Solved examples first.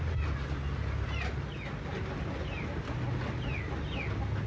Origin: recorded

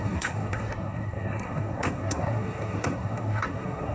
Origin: remade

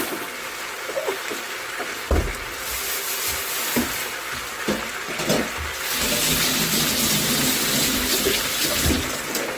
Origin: recorded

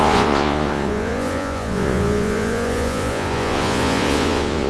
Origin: remade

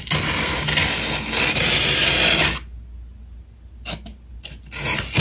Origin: recorded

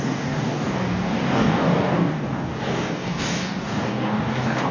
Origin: remade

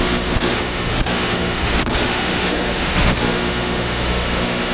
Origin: remade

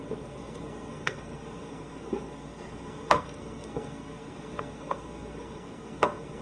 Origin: remade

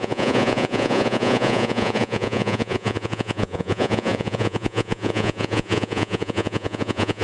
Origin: remade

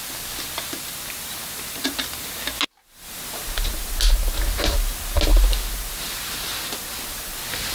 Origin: recorded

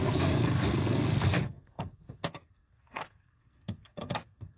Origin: remade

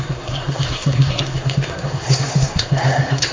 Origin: remade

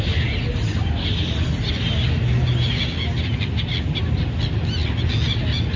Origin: recorded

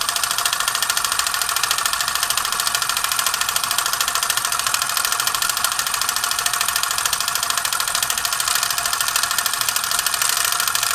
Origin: recorded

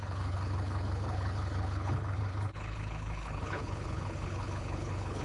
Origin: remade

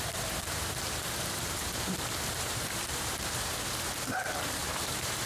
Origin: remade